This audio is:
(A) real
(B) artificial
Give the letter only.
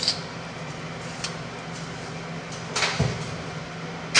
A